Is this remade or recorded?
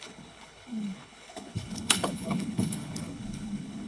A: remade